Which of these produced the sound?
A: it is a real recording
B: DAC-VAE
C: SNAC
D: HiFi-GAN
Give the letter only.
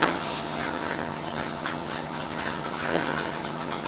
D